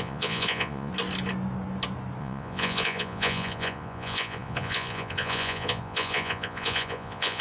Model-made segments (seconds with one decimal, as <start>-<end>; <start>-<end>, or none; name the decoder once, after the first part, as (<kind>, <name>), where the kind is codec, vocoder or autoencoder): 0.0-0.9 (vocoder, Vocos); 2.2-7.4